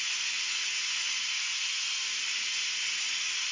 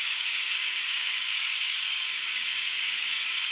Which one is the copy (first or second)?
second